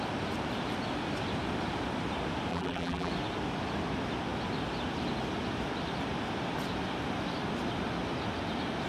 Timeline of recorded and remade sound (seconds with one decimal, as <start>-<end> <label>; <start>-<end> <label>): 0.0-2.5 recorded; 2.5-3.1 remade; 3.1-8.9 recorded